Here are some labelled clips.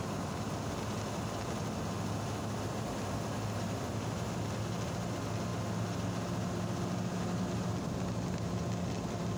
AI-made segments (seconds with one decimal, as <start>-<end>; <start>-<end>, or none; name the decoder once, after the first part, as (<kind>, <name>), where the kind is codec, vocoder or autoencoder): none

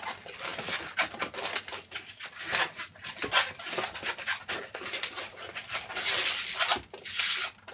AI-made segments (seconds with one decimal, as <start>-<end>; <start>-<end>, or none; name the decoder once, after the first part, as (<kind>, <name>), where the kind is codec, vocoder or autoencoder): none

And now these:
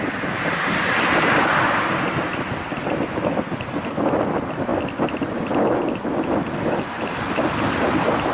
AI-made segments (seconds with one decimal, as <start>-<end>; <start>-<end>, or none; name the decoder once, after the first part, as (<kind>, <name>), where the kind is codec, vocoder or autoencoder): none

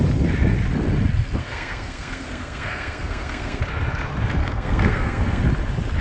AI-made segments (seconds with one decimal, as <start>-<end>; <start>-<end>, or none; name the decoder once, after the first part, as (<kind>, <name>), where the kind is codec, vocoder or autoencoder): 1.4-3.6 (codec, SNAC); 4.4-5.4

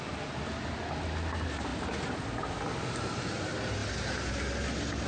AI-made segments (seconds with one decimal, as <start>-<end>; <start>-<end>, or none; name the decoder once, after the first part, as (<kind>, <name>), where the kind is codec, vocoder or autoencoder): none

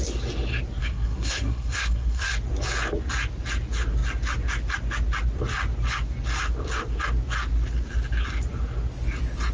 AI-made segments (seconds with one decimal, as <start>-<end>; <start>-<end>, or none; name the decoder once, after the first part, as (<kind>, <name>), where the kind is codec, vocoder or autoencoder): 0.8-2.3 (codec, SNAC)

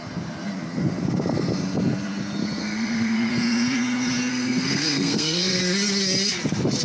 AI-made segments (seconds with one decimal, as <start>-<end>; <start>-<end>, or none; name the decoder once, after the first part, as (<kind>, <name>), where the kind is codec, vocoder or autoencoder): 2.6-3.3 (codec, SNAC); 4.3-5.6

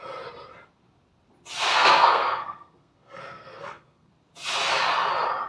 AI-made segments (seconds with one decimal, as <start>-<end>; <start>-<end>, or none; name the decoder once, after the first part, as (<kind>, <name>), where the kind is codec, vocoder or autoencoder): 1.7-4.1 (codec, SNAC)